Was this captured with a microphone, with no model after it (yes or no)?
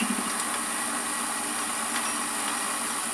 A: yes